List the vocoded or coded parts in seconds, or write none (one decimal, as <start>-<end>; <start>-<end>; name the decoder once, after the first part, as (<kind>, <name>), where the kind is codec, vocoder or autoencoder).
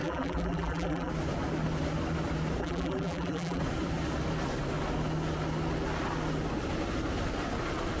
0.0-1.1 (vocoder, BigVGAN v2); 2.6-3.6